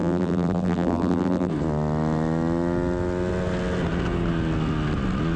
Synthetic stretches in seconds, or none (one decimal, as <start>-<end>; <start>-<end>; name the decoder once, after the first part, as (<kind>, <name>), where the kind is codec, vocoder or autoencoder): 0.0-1.5 (vocoder, BigVGAN v2)